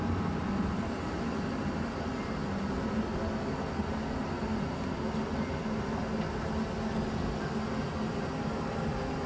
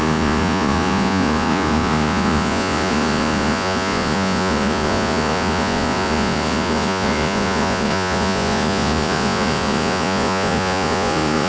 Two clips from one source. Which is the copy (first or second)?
second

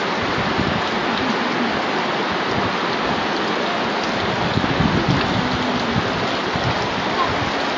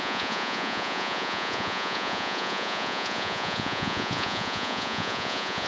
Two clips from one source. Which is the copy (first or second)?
second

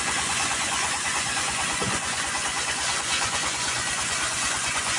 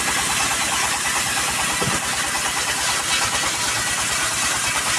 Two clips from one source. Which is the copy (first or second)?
first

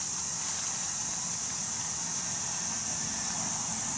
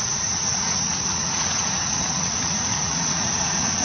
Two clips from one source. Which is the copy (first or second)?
second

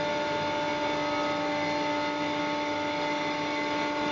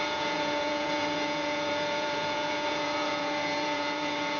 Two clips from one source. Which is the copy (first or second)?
second